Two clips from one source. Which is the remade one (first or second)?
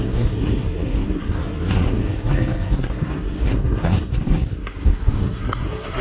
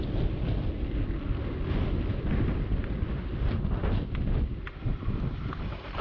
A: first